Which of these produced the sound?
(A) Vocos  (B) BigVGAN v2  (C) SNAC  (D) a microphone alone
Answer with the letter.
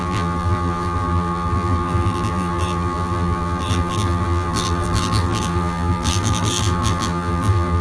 B